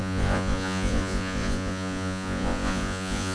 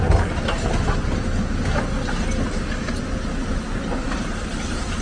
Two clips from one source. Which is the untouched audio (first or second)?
second